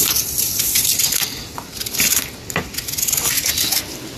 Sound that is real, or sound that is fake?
fake